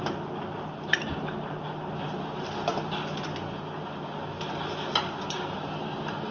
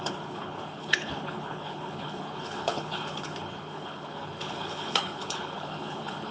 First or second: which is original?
first